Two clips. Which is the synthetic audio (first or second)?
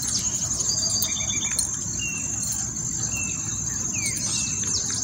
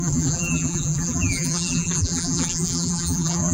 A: second